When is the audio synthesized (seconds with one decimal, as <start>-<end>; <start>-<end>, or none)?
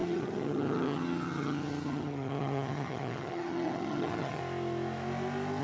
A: 0.0-4.4